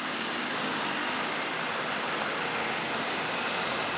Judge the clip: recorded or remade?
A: recorded